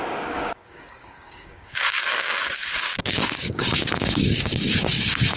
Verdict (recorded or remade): remade